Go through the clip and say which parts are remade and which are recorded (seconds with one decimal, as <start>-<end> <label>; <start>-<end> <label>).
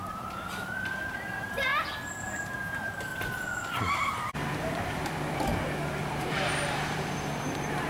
0.0-1.7 remade; 1.7-2.2 recorded; 2.2-3.1 remade; 3.1-3.8 recorded; 3.8-5.5 remade; 5.5-6.2 recorded; 6.2-7.9 remade